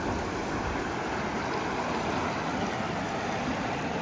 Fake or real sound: real